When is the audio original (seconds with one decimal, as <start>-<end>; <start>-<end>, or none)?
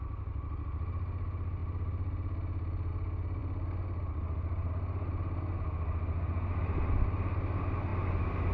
0.0-8.5